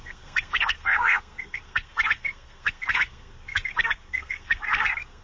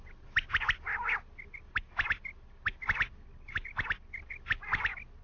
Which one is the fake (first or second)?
first